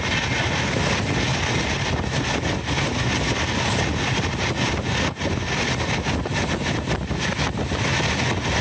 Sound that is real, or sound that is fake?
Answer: real